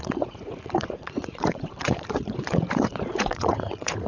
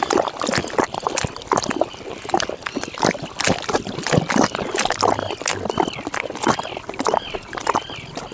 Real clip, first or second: second